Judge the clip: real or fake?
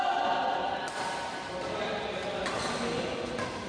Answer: real